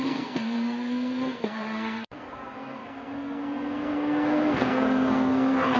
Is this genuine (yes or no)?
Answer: no